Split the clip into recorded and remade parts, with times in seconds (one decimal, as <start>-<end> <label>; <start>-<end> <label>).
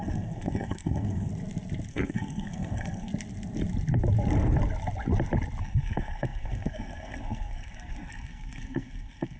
0.0-1.3 remade; 1.3-1.9 recorded; 1.9-3.1 remade; 3.1-5.6 recorded; 5.6-9.4 remade